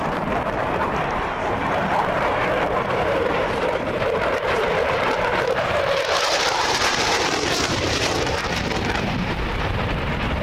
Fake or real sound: fake